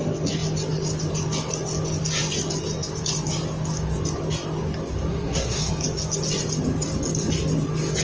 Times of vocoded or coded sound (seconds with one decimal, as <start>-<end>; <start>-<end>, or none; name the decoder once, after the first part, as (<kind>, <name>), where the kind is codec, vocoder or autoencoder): 5.1-5.7 (codec, SNAC)